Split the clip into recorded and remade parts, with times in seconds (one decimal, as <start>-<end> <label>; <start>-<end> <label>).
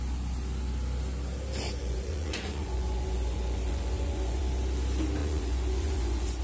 0.0-1.8 recorded; 1.8-4.4 remade; 4.4-5.2 recorded; 5.2-6.4 remade